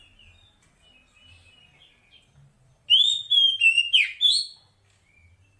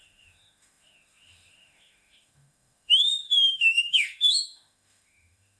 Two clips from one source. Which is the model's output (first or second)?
second